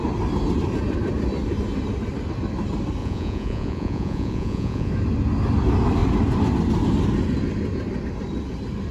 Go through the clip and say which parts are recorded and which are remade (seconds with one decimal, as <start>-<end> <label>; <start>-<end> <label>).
0.0-3.0 recorded; 3.0-4.9 remade; 4.9-8.9 recorded